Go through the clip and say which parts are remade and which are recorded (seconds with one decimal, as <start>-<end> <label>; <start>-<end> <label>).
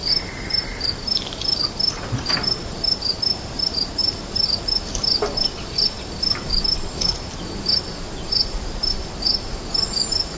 0.0-10.4 recorded